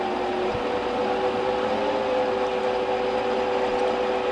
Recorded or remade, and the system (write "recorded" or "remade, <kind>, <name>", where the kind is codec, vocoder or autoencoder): recorded